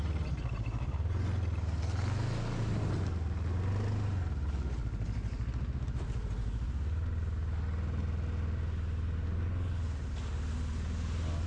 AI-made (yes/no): no